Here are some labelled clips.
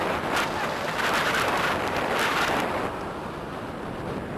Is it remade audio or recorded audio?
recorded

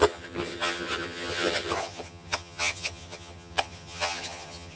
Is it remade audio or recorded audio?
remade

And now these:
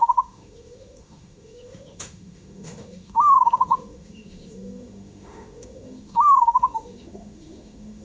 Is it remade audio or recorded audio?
remade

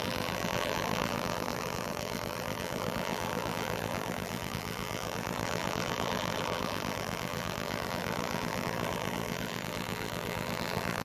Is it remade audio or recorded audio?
remade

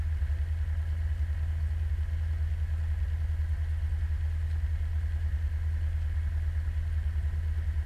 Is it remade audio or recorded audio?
recorded